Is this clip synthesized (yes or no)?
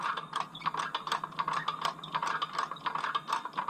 no